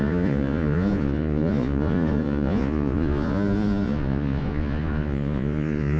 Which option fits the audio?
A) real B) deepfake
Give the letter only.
B